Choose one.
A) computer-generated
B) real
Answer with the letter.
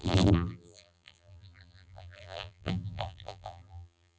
A